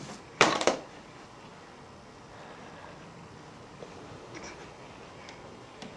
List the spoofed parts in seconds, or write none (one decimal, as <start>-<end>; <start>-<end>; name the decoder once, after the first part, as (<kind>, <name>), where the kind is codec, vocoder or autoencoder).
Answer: 0.0-1.5 (vocoder, BigVGAN v2); 3.7-4.6; 5.5-6.0